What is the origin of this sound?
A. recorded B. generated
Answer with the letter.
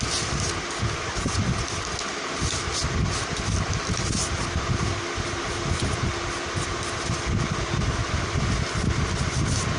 A